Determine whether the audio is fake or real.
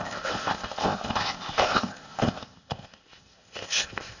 fake